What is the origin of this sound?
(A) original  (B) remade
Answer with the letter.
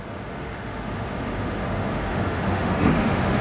B